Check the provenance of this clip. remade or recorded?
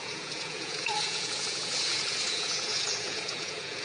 remade